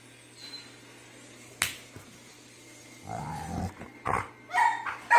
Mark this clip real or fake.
real